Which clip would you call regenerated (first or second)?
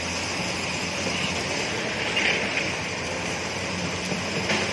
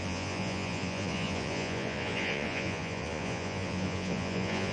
second